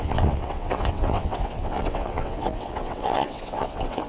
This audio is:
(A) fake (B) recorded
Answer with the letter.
A